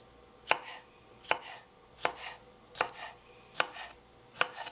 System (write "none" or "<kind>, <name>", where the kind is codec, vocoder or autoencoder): none